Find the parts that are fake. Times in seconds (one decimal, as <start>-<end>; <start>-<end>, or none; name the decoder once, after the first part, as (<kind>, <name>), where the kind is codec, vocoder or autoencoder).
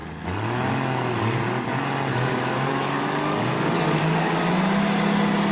2.1-4.5 (codec, DAC)